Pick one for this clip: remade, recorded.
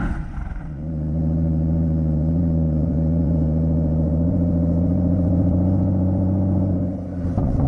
remade